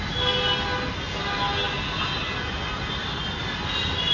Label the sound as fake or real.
real